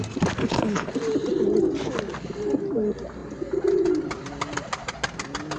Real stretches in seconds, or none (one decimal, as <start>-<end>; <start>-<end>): 0.0-0.4; 0.9-5.6